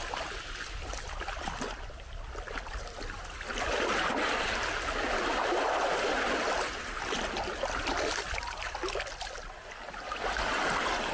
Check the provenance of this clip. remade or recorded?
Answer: recorded